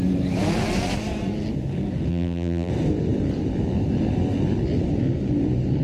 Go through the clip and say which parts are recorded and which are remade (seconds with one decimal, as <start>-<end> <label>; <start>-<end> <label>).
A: 0.0-2.1 recorded; 2.1-2.7 remade; 2.7-5.8 recorded